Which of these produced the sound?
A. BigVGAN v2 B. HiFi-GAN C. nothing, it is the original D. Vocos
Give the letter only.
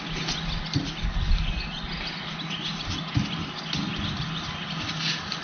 C